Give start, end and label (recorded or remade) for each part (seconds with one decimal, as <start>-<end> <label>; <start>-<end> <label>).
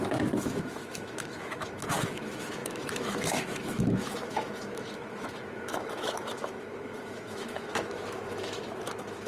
0.0-9.3 remade